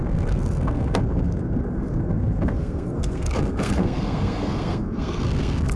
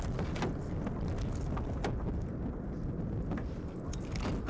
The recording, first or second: second